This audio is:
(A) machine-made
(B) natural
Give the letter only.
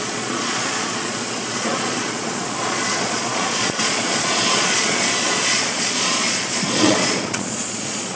A